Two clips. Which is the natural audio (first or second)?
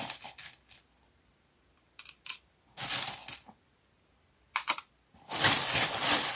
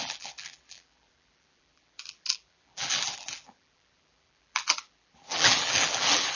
first